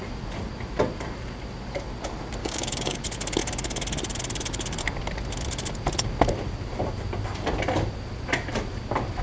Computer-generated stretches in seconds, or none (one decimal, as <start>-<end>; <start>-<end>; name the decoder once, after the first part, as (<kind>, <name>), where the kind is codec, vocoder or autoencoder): 2.4-3.0 (codec, DAC)